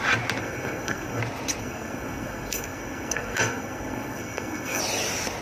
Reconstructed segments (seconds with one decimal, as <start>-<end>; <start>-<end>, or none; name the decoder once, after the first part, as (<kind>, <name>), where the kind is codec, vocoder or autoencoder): 0.4-1.2 (codec, SNAC); 1.6-4.8